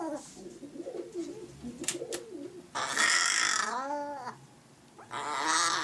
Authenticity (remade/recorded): recorded